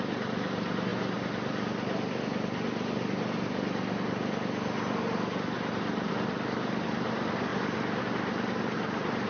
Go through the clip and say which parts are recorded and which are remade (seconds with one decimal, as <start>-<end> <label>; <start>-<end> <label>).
0.0-9.3 recorded